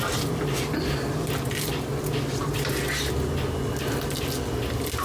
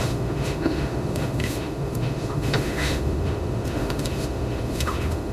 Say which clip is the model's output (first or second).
second